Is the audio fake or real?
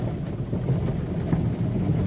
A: real